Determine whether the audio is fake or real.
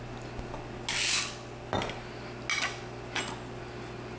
real